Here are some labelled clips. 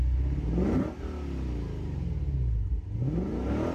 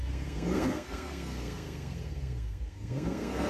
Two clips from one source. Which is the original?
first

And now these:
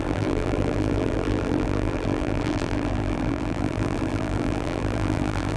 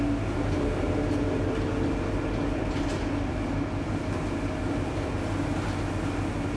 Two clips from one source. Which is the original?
second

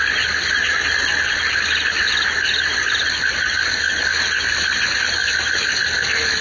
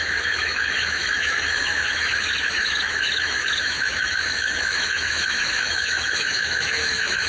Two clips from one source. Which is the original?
first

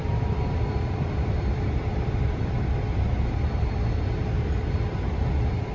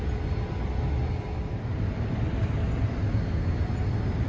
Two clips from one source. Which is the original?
second